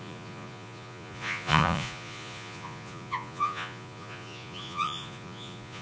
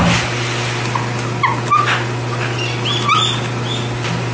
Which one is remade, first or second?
first